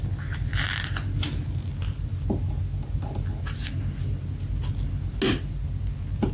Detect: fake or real real